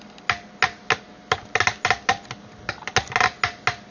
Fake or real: real